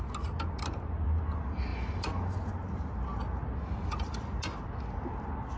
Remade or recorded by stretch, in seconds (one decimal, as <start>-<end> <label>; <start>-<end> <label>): 0.0-5.6 recorded